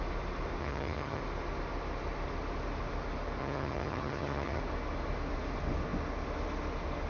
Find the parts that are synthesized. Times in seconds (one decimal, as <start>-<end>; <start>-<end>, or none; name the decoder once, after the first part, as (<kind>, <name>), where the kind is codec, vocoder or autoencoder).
0.6-1.2 (vocoder, HiFi-GAN); 3.4-4.6